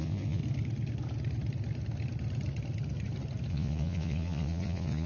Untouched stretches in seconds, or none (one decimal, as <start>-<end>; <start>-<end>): 0.4-3.5